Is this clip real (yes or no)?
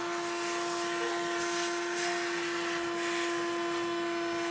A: yes